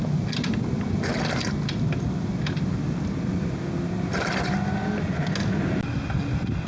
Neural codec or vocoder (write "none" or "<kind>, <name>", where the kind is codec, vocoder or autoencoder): none